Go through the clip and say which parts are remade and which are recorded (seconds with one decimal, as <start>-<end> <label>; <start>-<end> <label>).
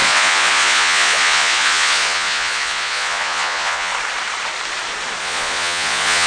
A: 0.0-3.9 remade; 3.9-5.2 recorded; 5.2-6.3 remade